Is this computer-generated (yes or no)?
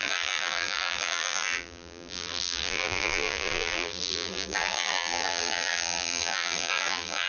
yes